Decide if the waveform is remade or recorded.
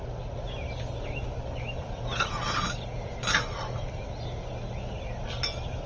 recorded